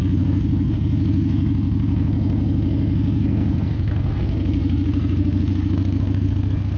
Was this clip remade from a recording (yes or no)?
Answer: yes